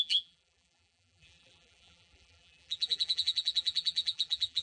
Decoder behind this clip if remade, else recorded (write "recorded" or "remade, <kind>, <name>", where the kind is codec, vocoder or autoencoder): remade, vocoder, BigVGAN v2